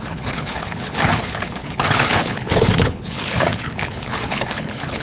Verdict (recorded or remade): remade